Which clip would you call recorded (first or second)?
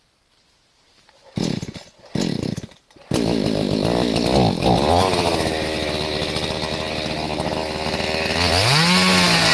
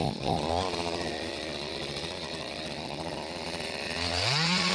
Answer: first